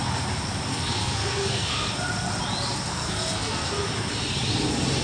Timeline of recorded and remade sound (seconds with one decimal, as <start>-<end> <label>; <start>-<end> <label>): 0.0-0.7 recorded; 0.7-1.9 remade; 1.9-2.9 recorded; 2.9-3.7 remade; 3.7-5.0 recorded